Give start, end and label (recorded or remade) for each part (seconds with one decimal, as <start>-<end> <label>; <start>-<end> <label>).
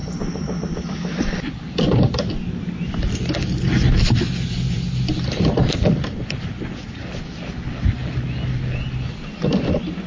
0.0-2.3 remade; 2.3-3.4 recorded; 3.4-6.6 remade; 6.6-10.1 recorded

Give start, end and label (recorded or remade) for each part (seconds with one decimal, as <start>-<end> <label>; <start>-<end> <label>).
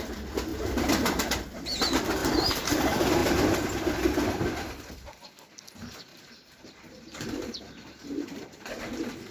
0.0-2.2 recorded; 2.2-2.8 remade; 2.8-6.1 recorded; 6.1-8.8 remade; 8.8-9.3 recorded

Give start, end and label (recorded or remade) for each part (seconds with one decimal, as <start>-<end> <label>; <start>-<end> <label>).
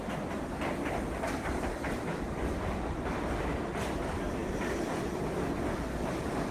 0.0-6.5 recorded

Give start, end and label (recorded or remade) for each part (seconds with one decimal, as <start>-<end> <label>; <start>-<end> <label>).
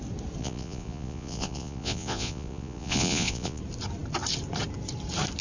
0.0-0.4 recorded; 0.4-3.6 remade; 3.6-5.4 recorded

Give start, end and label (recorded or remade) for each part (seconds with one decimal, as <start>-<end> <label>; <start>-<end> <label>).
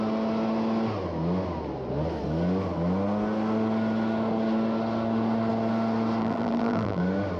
0.0-6.2 recorded; 6.2-7.0 remade; 7.0-7.4 recorded